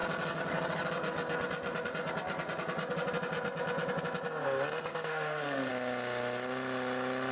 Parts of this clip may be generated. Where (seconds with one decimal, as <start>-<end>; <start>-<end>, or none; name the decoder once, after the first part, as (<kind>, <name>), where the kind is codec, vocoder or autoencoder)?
4.9-5.7 (codec, SNAC)